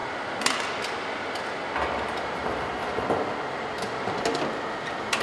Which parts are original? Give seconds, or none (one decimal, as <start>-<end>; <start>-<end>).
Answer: 0.0-5.2